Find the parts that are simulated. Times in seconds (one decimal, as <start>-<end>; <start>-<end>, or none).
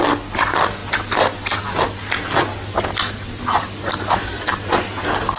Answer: none